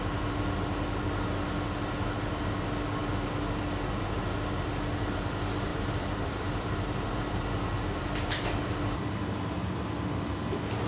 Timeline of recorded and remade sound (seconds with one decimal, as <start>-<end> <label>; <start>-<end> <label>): 0.0-5.7 recorded; 5.7-8.6 remade; 8.6-10.9 recorded